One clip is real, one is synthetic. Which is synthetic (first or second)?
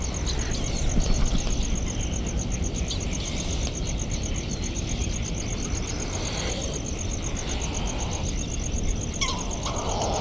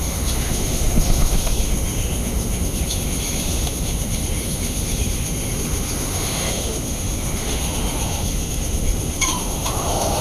second